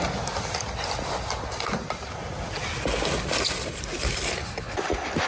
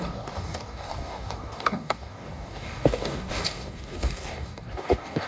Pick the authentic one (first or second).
first